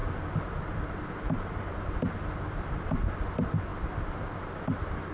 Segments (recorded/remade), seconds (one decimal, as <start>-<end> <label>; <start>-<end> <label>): 0.0-5.1 recorded